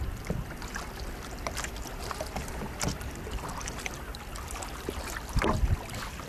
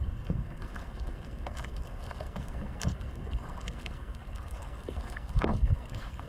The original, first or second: first